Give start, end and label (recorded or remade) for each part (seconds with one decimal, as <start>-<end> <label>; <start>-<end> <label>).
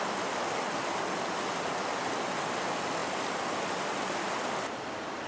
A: 0.0-5.3 recorded